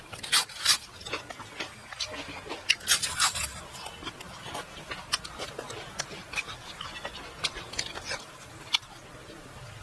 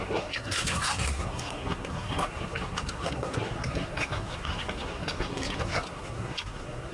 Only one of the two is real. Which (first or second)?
first